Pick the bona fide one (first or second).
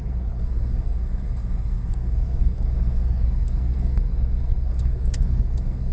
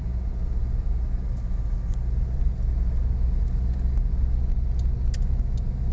second